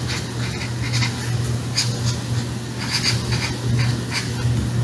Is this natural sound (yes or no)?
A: yes